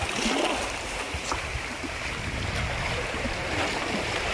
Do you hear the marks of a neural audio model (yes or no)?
no